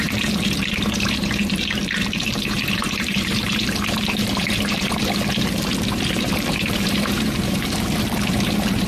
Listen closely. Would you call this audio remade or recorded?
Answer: remade